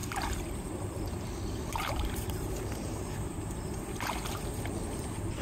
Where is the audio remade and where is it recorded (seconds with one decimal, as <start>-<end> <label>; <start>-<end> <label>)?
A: 0.0-3.2 remade; 3.2-5.4 recorded